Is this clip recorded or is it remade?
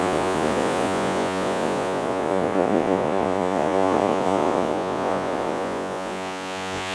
remade